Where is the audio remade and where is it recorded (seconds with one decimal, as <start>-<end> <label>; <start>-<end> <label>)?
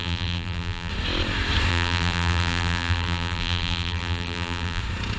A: 0.0-0.9 remade; 0.9-1.7 recorded; 1.7-4.8 remade; 4.8-5.2 recorded